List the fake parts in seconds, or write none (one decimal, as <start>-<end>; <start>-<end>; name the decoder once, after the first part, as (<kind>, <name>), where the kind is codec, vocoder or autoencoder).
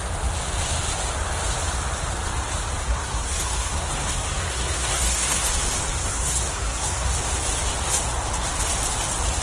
2.8-5.5 (codec, SNAC); 6.0-7.1